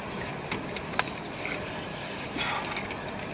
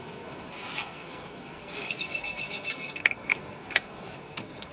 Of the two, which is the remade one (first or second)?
second